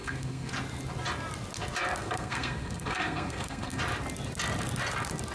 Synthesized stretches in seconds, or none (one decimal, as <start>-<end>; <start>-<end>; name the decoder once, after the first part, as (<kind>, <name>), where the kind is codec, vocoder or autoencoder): 0.0-0.5 (codec, SNAC); 2.0-3.8